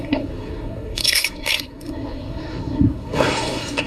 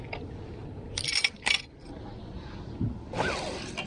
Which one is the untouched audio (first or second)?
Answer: second